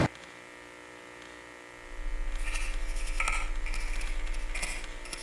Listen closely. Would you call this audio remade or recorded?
recorded